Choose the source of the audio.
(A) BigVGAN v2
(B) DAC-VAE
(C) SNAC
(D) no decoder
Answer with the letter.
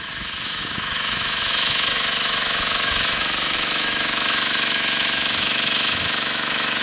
B